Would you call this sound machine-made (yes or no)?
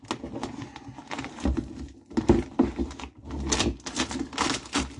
no